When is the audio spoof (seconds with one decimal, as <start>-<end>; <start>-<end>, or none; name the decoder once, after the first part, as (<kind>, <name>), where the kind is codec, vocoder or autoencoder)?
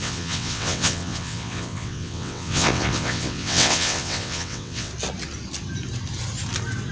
0.0-4.9 (vocoder, WaveNeXt)